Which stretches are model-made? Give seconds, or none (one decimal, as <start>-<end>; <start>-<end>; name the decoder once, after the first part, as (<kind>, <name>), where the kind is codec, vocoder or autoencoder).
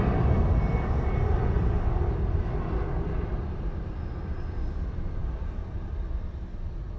none